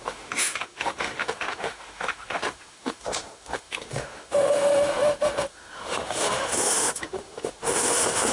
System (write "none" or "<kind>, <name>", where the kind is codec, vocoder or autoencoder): autoencoder, DAC-VAE